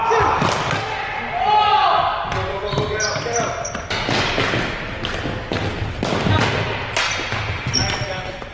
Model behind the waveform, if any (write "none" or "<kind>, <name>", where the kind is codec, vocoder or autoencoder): none